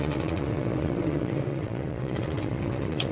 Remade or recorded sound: remade